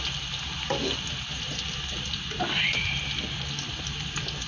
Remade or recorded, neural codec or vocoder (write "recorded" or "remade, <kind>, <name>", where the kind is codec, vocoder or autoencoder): recorded